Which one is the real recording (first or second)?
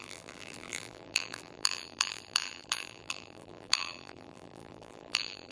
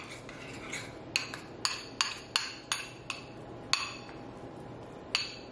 second